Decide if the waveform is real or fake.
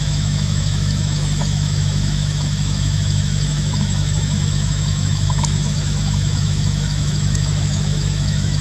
fake